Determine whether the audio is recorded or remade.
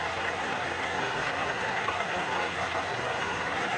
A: remade